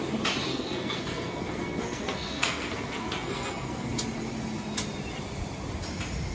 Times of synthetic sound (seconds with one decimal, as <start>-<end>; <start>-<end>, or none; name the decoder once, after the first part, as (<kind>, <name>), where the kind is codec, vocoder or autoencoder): 0.5-3.9 (codec, SNAC)